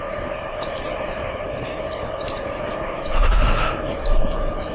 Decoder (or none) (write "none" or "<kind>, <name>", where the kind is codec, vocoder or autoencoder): none